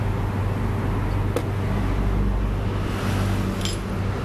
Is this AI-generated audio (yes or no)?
no